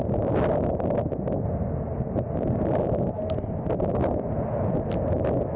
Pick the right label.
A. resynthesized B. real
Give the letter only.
B